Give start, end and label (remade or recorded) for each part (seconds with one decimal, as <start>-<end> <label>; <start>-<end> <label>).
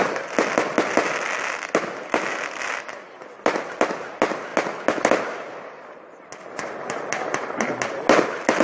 0.0-8.6 recorded